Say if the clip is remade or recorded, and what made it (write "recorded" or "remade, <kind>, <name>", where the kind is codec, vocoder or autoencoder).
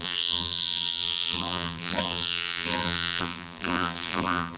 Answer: remade, vocoder, BigVGAN v2